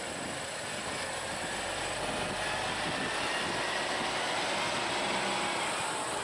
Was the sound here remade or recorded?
recorded